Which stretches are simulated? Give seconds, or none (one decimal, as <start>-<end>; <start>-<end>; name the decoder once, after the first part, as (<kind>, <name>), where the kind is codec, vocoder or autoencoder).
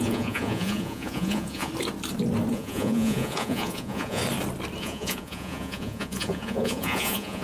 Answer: 0.0-1.7 (vocoder, Vocos); 2.5-4.2; 4.8-7.4